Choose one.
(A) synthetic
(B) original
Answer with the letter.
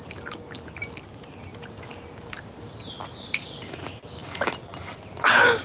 B